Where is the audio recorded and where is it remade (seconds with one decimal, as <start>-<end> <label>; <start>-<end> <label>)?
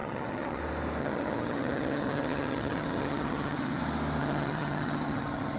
0.0-0.6 remade; 0.6-1.0 recorded; 1.0-3.8 remade; 3.8-4.2 recorded; 4.2-5.6 remade